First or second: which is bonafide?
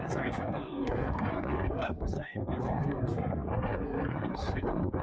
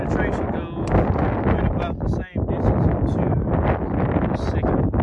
second